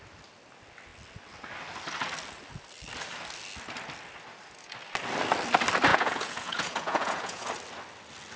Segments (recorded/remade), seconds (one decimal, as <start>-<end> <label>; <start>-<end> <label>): 0.0-5.9 recorded; 5.9-7.5 remade; 7.5-8.4 recorded

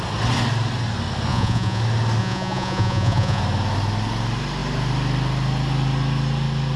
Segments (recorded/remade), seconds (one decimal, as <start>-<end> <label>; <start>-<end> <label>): 0.0-1.3 recorded; 1.3-1.8 remade; 1.8-2.2 recorded; 2.2-3.4 remade; 3.4-6.8 recorded

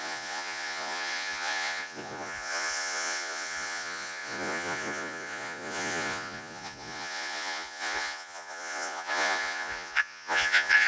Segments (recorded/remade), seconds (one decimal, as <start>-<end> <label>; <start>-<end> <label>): 0.0-10.9 remade

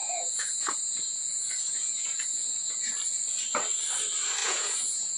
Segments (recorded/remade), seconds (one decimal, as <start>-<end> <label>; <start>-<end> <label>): 0.0-2.9 remade; 2.9-4.4 recorded; 4.4-5.2 remade

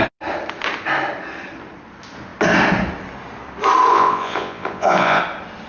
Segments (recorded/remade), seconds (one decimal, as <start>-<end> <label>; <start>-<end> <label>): 0.0-3.9 recorded; 3.9-5.2 remade; 5.2-5.7 recorded